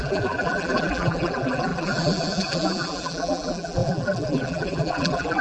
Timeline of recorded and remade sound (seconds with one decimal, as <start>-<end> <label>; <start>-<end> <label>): 0.0-5.4 remade